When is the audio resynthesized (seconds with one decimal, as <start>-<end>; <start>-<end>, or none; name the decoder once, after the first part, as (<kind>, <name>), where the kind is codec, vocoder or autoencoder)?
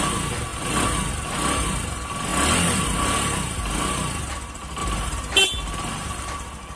4.8-5.4 (vocoder, BigVGAN v2)